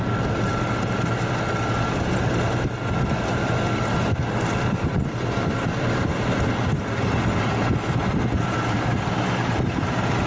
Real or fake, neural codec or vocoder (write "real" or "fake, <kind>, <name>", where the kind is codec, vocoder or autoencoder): real